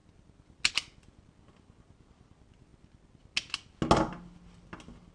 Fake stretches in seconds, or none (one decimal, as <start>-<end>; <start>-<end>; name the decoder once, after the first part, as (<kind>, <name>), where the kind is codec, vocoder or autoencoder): none